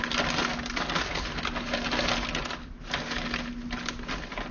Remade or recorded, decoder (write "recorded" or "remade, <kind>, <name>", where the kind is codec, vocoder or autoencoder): recorded